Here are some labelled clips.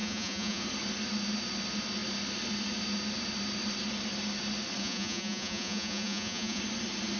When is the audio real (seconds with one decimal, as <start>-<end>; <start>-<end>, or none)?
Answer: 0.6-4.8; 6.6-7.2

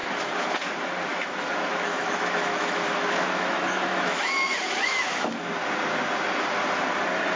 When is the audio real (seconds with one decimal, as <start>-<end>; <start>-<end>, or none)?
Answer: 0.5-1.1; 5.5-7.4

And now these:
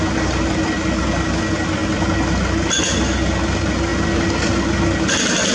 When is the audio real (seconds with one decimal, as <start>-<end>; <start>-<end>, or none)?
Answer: 0.0-5.5

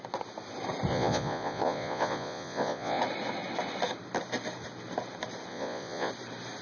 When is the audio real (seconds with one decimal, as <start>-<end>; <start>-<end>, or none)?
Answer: 0.0-0.9; 3.0-5.5; 6.1-6.6

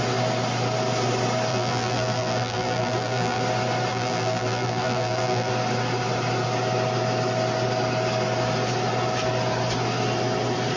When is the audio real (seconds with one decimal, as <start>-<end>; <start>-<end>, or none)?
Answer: 0.0-1.5; 3.4-3.9; 5.5-10.8

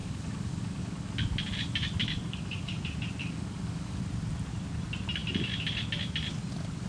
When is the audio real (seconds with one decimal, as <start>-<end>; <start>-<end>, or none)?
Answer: 1.1-2.0; 2.8-3.2; 4.0-6.9

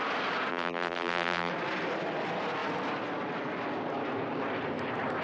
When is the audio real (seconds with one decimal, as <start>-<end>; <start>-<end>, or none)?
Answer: 0.0-0.5; 1.5-5.2

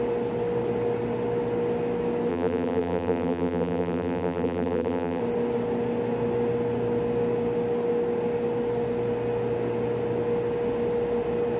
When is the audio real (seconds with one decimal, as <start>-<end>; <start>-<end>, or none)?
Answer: 0.0-2.3; 5.2-11.6